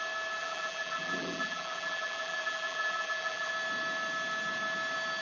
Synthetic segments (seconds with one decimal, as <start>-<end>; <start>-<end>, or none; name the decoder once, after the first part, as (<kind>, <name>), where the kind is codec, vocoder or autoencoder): 0.4-3.5 (vocoder, BigVGAN v2)